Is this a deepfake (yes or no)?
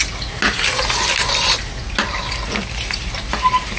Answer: no